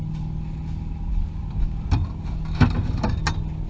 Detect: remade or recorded recorded